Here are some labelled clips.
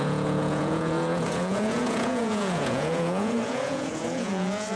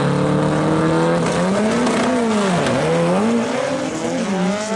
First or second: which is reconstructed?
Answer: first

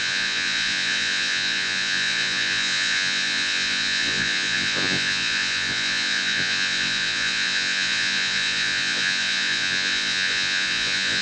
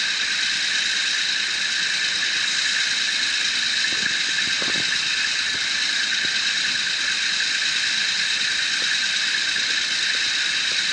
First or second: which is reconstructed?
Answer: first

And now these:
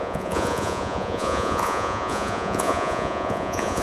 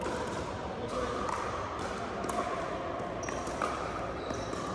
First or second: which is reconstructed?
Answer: first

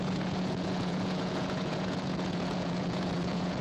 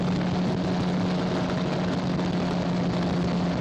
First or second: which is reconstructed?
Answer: first